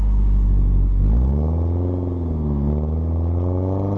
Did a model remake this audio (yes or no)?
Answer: no